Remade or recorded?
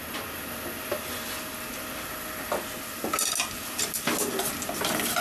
recorded